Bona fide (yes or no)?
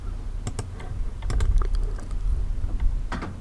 yes